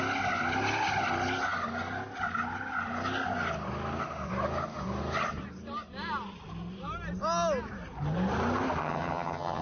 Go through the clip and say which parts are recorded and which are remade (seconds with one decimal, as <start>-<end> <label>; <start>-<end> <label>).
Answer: 0.0-8.8 recorded; 8.8-9.6 remade